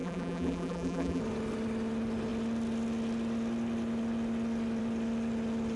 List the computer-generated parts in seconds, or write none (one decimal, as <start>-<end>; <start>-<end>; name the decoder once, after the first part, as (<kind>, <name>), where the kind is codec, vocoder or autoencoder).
0.0-1.2 (vocoder, BigVGAN v2)

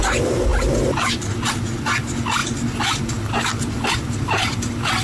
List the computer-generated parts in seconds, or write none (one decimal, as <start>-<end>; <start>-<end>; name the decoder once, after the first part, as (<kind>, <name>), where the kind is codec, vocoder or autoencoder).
0.5-1.5 (vocoder, BigVGAN v2)

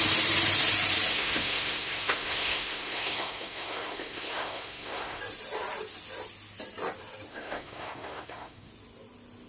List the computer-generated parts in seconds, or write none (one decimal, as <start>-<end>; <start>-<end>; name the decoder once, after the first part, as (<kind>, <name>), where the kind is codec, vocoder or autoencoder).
1.1-5.2 (codec, SNAC); 7.3-8.7

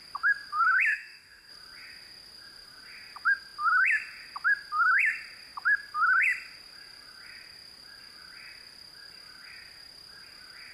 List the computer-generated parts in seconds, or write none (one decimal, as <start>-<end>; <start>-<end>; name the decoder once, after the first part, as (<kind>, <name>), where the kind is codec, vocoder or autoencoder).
0.9-1.5 (codec, DAC)

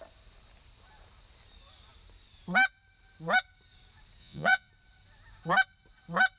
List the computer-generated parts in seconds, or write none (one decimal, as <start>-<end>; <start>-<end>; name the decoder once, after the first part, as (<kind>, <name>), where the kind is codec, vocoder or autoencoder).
4.2-4.7 (vocoder, Vocos)